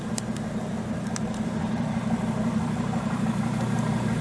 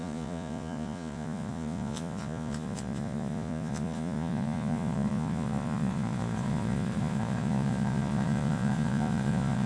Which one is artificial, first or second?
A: second